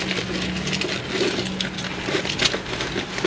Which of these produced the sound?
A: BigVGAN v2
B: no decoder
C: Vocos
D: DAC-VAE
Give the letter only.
B